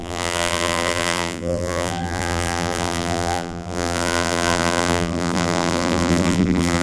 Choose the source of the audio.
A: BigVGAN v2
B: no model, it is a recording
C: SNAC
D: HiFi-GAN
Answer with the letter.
A